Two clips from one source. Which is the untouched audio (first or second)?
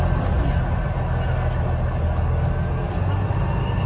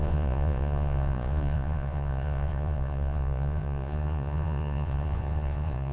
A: first